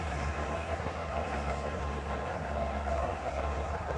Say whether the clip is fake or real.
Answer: fake